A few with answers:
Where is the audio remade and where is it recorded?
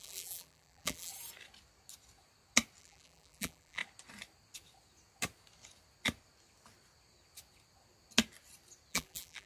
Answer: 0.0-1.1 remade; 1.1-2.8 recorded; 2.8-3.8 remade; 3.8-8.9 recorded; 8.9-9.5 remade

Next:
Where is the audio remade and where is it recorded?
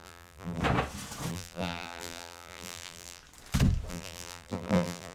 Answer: 0.0-0.6 remade; 0.6-1.3 recorded; 1.3-3.2 remade; 3.2-3.9 recorded; 3.9-5.1 remade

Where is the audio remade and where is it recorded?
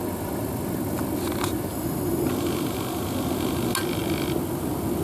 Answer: 0.0-1.7 recorded; 1.7-2.3 remade; 2.3-5.0 recorded